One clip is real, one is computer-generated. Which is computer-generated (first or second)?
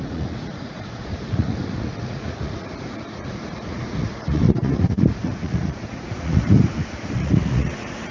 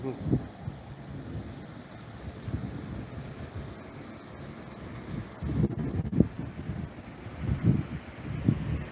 first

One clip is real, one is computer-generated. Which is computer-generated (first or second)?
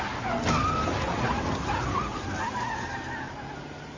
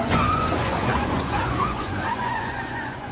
second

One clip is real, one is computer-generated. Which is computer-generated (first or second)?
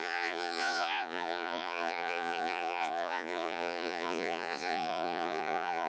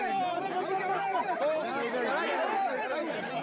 first